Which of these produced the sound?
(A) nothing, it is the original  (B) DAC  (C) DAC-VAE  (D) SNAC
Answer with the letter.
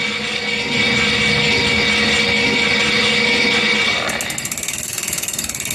A